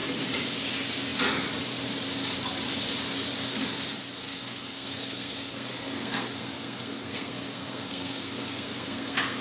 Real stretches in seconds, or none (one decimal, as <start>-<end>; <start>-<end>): 0.0-4.2

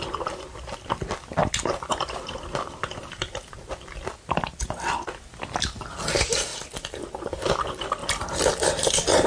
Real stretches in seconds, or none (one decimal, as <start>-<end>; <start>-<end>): 0.0-1.4; 3.7-8.0; 8.5-9.3

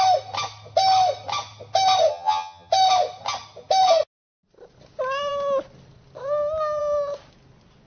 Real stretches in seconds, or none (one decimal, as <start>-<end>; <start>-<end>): 0.0-2.1; 2.7-7.9

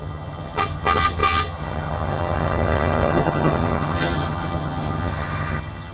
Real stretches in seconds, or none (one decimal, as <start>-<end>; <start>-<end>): none

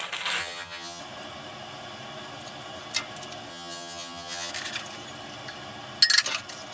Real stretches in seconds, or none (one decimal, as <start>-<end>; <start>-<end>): 0.0-0.4; 1.0-3.5; 4.5-6.7

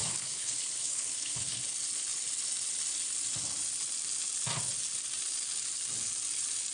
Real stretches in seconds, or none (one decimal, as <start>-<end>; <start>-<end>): 1.6-6.7

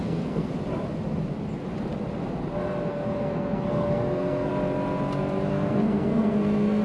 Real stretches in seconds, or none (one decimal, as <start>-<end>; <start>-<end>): 0.5-2.9; 4.5-5.5

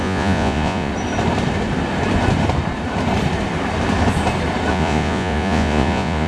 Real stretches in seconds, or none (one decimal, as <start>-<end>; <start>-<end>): 0.9-4.7